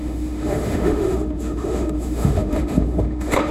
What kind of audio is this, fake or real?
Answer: fake